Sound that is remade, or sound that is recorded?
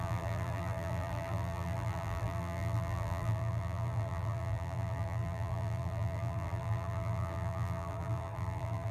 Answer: remade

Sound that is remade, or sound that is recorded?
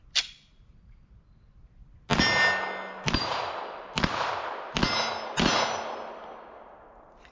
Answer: recorded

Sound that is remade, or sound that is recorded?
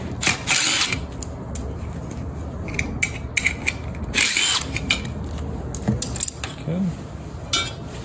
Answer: recorded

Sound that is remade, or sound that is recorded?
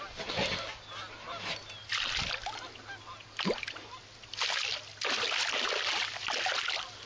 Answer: recorded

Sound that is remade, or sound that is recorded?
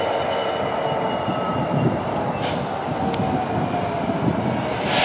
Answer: recorded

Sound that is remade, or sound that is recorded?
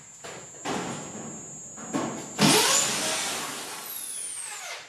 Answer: recorded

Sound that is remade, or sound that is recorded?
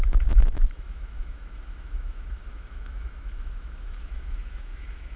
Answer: remade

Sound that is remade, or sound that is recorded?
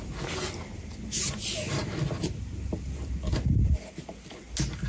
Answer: recorded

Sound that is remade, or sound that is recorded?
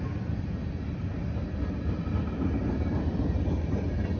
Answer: recorded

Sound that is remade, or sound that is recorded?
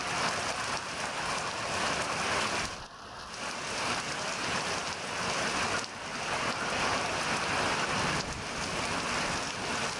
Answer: recorded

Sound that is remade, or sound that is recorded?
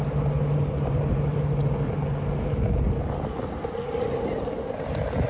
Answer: recorded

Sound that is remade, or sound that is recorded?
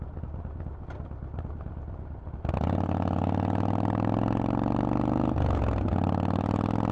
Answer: recorded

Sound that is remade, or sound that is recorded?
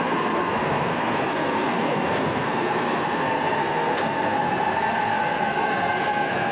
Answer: remade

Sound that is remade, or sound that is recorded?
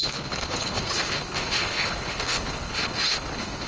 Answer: remade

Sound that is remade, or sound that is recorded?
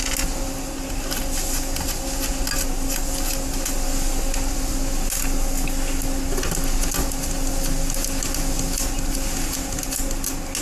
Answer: recorded